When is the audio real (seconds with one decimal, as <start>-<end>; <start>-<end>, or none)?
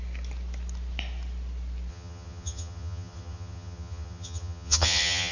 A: 0.0-1.9